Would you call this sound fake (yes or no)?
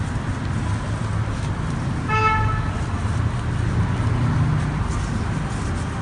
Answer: no